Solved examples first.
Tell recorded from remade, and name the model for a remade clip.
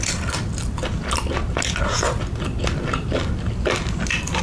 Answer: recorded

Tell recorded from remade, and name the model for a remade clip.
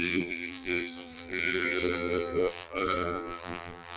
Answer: remade, vocoder, BigVGAN v2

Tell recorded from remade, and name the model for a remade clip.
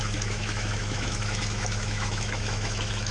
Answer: remade, autoencoder, DAC-VAE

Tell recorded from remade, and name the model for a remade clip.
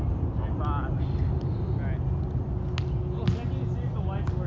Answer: recorded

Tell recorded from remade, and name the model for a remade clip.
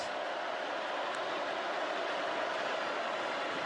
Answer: recorded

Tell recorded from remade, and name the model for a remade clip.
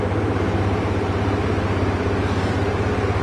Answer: remade, vocoder, BigVGAN v2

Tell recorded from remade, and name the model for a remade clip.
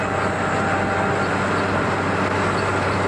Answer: recorded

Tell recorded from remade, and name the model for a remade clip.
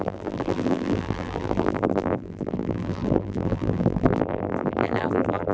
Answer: remade, vocoder, BigVGAN v2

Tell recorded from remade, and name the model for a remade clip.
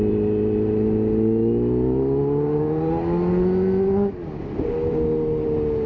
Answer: recorded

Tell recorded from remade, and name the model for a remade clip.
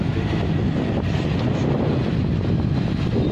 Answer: recorded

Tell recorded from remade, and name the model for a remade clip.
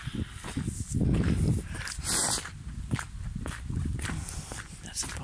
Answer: recorded